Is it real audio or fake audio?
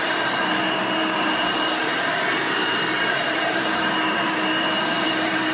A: fake